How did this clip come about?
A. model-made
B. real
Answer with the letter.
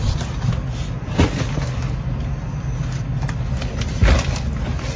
B